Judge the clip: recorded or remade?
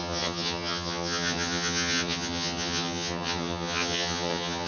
remade